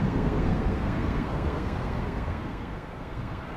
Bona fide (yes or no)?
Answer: no